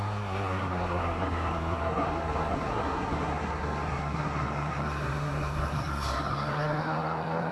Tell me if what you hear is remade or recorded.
remade